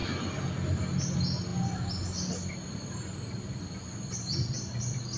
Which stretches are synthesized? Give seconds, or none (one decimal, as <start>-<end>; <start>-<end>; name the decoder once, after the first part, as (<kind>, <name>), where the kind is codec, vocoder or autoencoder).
none